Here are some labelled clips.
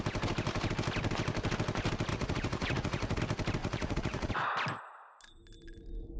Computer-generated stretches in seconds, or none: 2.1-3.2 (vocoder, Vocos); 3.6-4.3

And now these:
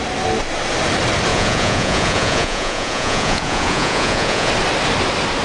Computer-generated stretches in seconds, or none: 1.3-4.5 (vocoder, Vocos)

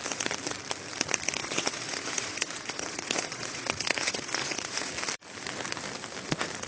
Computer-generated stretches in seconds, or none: 1.4-4.9 (vocoder, Vocos)

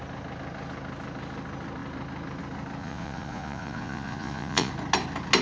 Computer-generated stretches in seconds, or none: 2.8-4.7 (vocoder, Vocos)

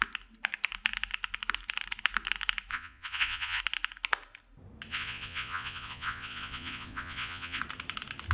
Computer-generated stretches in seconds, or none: 2.7-3.6 (vocoder, Vocos); 4.9-7.6

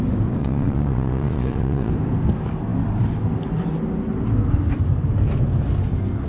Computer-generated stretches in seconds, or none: 0.4-1.9 (vocoder, Vocos)